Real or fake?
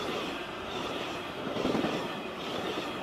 fake